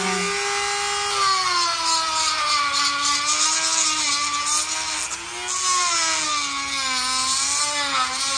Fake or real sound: real